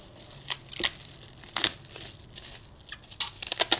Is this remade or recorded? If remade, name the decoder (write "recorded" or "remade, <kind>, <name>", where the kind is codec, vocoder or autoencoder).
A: recorded